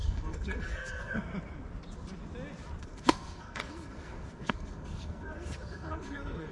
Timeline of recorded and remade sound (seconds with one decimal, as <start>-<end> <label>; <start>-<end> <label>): 0.0-1.3 remade; 1.3-2.8 recorded; 2.8-6.5 remade